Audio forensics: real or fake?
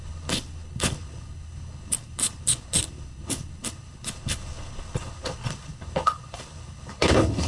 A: fake